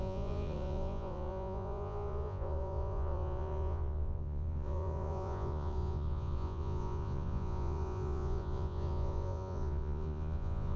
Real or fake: fake